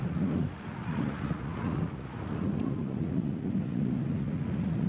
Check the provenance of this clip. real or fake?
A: fake